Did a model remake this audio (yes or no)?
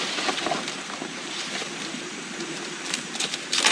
yes